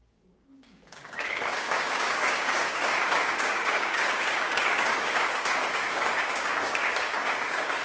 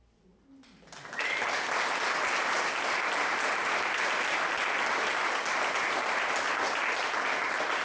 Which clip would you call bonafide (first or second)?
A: second